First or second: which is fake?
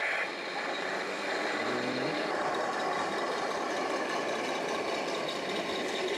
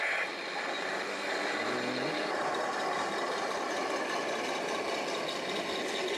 first